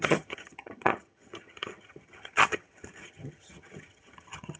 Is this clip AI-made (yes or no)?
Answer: yes